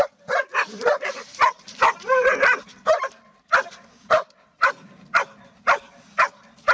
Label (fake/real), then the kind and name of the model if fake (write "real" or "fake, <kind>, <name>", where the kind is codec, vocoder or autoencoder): real